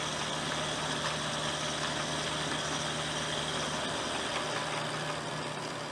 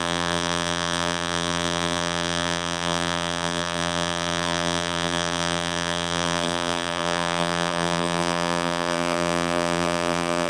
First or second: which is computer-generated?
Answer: second